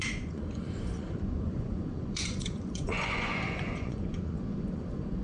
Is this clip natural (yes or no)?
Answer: no